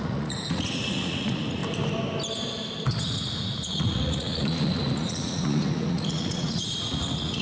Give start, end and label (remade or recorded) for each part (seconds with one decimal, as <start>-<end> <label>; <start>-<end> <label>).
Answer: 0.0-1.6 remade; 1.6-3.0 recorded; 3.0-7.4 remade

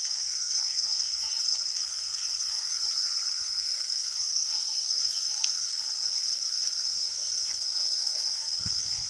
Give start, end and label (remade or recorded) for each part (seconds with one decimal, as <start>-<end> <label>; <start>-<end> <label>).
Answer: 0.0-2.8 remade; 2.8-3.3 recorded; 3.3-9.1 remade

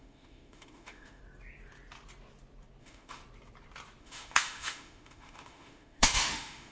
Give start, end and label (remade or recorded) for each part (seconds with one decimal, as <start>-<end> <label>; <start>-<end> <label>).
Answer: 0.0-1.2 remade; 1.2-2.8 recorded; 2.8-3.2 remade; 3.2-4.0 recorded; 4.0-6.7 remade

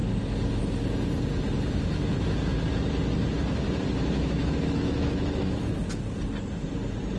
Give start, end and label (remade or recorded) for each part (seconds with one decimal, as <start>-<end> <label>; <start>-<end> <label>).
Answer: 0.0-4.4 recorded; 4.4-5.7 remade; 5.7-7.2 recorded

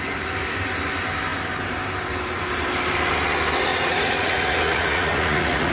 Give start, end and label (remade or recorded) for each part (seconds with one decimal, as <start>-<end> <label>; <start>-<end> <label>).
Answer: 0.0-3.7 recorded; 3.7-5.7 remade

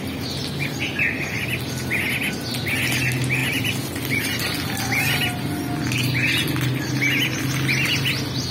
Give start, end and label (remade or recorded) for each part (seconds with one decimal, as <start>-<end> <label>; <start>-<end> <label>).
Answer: 0.0-8.5 recorded